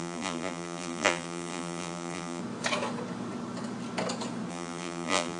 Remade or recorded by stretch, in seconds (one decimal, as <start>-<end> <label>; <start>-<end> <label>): 0.0-2.4 remade; 2.4-4.5 recorded; 4.5-5.4 remade

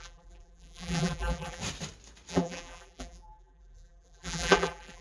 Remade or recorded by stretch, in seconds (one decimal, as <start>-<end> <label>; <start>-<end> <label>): 0.0-1.6 remade; 1.6-2.3 recorded; 2.3-5.0 remade